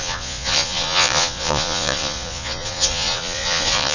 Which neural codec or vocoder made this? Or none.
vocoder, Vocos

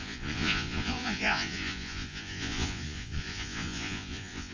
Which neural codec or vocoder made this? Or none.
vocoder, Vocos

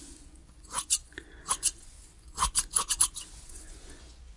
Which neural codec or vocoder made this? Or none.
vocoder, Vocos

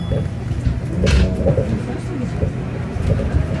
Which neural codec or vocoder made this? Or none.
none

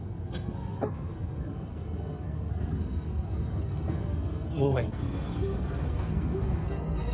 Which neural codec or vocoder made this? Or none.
codec, SNAC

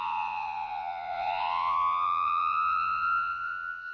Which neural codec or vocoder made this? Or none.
vocoder, Vocos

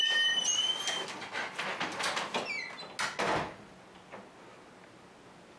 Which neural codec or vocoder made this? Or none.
none